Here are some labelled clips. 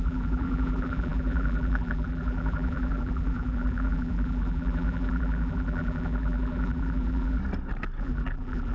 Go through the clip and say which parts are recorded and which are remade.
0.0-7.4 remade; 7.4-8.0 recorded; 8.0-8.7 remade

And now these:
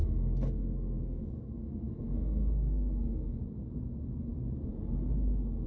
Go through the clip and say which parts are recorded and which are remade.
0.0-3.4 remade; 3.4-5.7 recorded

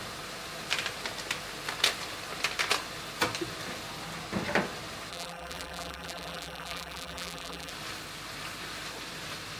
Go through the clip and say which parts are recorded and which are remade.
0.0-5.1 recorded; 5.1-7.7 remade; 7.7-9.6 recorded

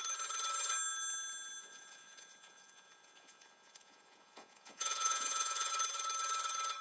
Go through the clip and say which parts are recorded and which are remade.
0.0-1.6 recorded; 1.6-5.7 remade; 5.7-6.8 recorded

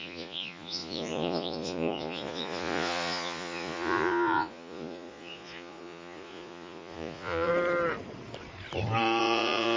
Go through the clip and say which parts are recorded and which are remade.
0.0-7.5 remade; 7.5-9.2 recorded; 9.2-9.8 remade

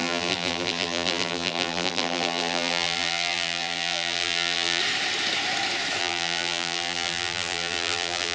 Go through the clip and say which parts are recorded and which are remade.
0.0-4.8 remade; 4.8-6.0 recorded; 6.0-8.3 remade